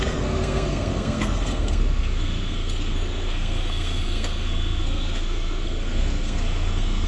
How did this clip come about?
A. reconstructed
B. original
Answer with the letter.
A